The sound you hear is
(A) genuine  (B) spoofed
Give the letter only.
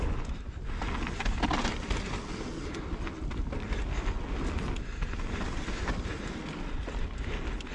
A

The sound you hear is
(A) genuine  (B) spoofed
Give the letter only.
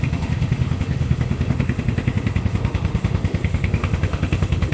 B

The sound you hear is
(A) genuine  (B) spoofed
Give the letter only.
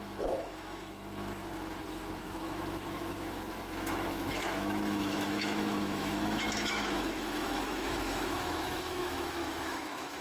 B